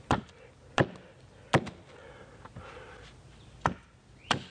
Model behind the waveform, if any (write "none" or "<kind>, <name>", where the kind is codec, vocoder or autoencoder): none